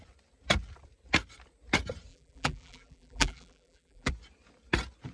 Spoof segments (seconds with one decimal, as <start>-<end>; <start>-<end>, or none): 2.1-4.1